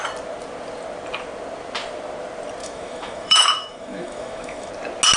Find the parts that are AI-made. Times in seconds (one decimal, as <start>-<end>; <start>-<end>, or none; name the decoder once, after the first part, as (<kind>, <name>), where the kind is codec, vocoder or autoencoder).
2.6-4.7 (autoencoder, DAC-VAE)